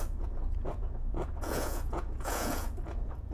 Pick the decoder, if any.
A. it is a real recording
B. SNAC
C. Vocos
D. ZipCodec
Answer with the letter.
C